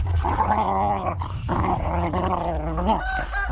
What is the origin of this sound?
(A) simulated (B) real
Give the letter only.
B